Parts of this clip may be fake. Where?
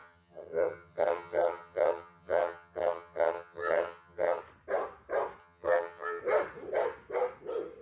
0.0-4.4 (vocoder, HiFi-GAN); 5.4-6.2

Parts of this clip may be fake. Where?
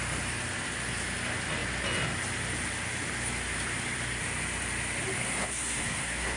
5.2-6.4 (codec, SNAC)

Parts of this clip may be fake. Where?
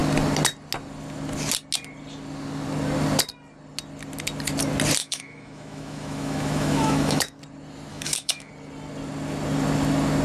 5.0-7.4 (autoencoder, DAC-VAE); 7.9-8.5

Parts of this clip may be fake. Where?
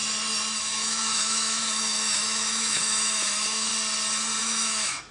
0.6-3.7 (autoencoder, DAC-VAE); 4.4-5.1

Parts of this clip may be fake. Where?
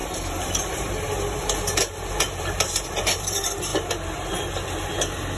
0.0-3.2 (vocoder, BigVGAN v2)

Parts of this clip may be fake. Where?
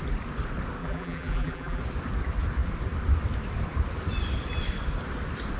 0.8-1.8 (vocoder, BigVGAN v2)